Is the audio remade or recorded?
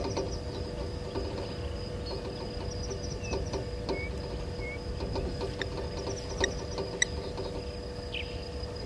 recorded